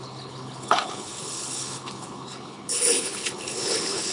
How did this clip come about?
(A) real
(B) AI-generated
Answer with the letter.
B